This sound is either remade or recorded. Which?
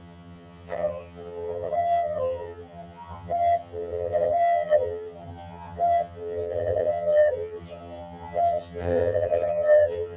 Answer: remade